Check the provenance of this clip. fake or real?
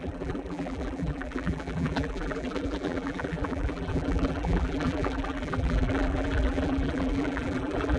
fake